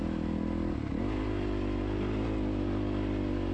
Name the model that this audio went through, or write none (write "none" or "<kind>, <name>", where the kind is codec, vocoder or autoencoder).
none